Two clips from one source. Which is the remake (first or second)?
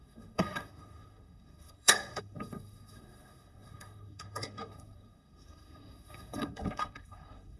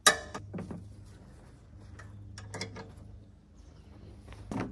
first